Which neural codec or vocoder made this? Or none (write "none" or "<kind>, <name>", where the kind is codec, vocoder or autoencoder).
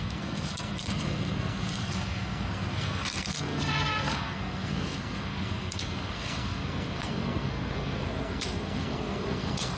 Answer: codec, SNAC